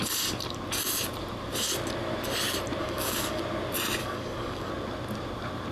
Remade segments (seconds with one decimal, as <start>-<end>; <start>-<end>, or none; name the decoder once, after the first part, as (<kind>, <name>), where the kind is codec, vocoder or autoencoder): 2.8-3.4 (codec, DAC); 4.0-4.7

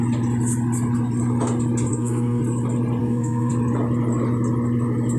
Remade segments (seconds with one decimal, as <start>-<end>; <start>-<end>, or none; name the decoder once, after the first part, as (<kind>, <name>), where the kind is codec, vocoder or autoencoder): 1.9-2.4 (codec, SNAC); 3.0-3.5

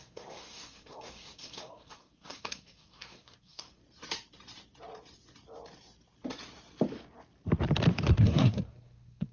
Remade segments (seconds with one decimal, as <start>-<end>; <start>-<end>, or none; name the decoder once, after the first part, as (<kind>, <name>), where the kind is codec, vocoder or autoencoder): 0.0-3.8 (codec, SNAC); 8.2-9.3